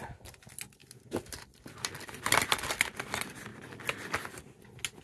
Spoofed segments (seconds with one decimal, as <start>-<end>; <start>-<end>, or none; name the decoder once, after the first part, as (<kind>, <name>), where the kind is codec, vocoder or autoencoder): none